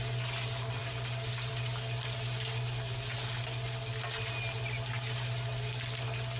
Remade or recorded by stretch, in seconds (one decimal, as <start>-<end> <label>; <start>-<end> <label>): 0.0-6.4 recorded